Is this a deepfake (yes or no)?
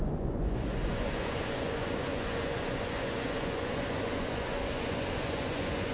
yes